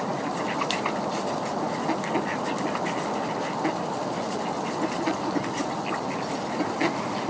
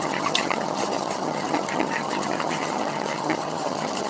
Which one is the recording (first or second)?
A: first